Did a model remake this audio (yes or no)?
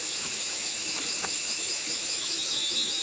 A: yes